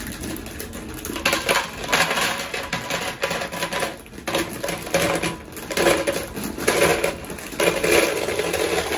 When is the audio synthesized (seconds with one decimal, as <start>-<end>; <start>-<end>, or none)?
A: none